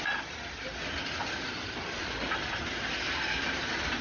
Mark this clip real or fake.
fake